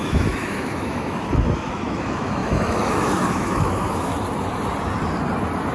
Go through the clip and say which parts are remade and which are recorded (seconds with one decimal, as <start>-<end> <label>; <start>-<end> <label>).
0.0-4.1 remade; 4.1-5.7 recorded